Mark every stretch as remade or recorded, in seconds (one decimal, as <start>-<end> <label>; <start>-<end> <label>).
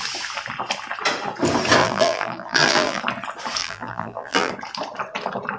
0.0-1.8 recorded; 1.8-3.0 remade; 3.0-3.6 recorded; 3.6-4.5 remade; 4.5-5.6 recorded